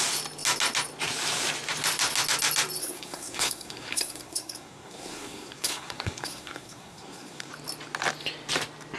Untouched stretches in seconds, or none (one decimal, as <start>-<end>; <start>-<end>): 0.0-2.8; 7.5-9.0